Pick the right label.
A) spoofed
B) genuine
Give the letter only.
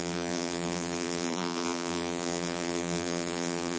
A